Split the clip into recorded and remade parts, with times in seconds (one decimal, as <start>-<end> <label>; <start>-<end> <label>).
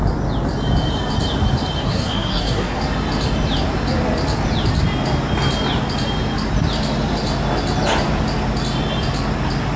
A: 0.0-1.8 recorded; 1.8-2.8 remade; 2.8-9.8 recorded